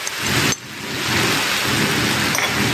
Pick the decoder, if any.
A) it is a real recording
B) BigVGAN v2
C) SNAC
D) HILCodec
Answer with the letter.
A